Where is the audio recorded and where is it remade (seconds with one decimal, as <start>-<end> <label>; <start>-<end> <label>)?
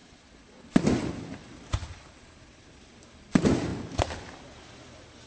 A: 0.0-5.3 recorded